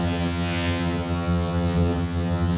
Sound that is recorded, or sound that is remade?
remade